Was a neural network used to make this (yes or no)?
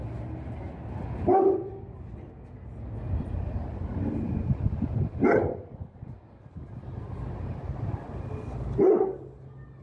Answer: no